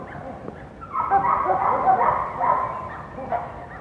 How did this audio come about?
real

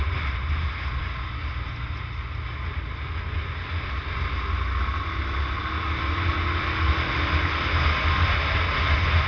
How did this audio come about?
real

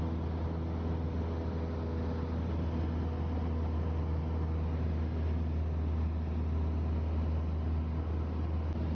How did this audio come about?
real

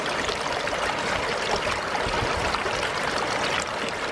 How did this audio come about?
real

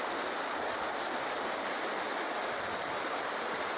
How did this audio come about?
real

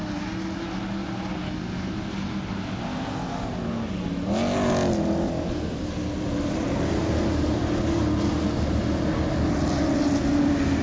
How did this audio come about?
real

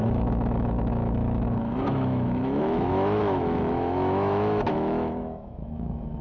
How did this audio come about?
fake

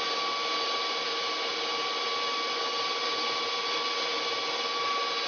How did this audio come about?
real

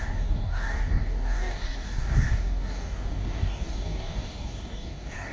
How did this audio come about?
fake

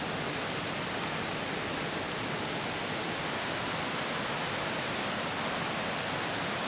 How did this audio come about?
real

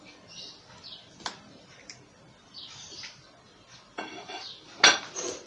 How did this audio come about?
real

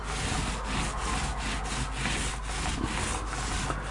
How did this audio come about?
real